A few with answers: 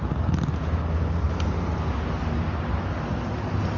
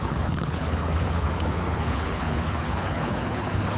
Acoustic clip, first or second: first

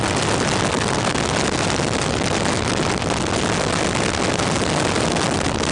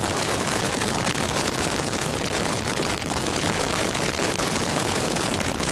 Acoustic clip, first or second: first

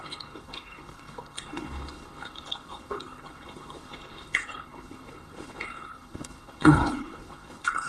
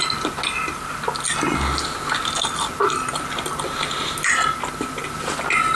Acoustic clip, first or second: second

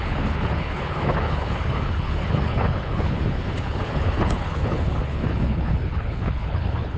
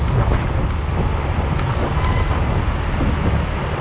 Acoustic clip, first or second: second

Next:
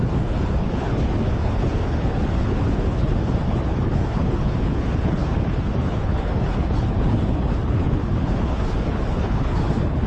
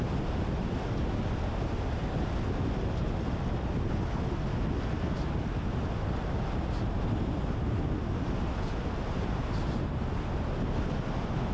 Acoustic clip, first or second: second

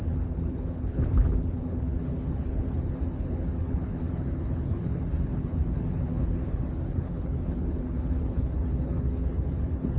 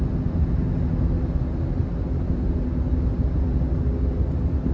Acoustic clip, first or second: second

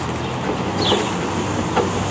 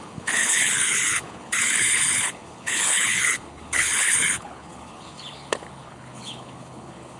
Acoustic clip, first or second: first